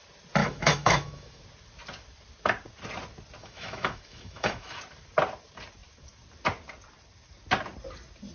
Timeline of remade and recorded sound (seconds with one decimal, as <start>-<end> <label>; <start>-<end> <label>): 0.0-0.4 recorded; 0.4-1.4 remade; 1.4-3.4 recorded; 3.4-4.8 remade; 4.8-8.3 recorded